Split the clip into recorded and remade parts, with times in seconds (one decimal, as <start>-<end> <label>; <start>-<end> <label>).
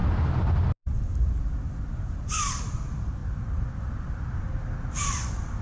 0.0-5.6 recorded